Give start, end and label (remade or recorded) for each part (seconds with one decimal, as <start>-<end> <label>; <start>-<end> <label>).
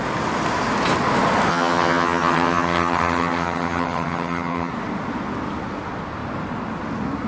0.0-1.5 recorded; 1.5-4.7 remade; 4.7-7.3 recorded